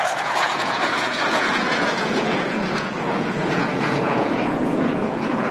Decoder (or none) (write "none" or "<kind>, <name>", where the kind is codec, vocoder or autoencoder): vocoder, Vocos